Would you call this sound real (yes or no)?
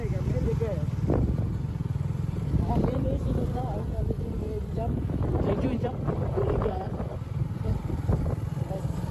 yes